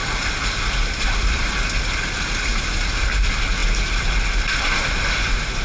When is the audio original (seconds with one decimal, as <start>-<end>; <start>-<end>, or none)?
0.0-5.6

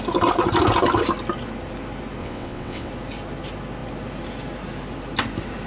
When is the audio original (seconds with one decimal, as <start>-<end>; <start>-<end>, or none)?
0.0-2.2; 2.9-5.7